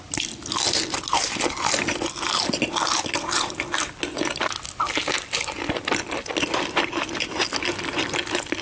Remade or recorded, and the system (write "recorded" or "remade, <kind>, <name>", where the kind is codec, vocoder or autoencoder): recorded